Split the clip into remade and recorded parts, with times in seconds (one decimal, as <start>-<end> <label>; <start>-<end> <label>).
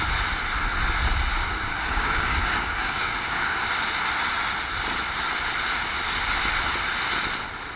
0.0-1.4 recorded; 1.4-3.7 remade; 3.7-7.8 recorded